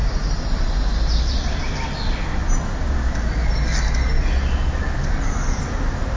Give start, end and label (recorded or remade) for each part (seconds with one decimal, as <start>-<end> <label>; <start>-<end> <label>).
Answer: 0.0-6.2 recorded